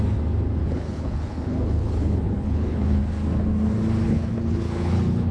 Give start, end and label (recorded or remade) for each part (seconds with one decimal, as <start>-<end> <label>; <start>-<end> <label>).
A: 0.0-0.6 recorded; 0.6-3.0 remade; 3.0-4.0 recorded; 4.0-5.3 remade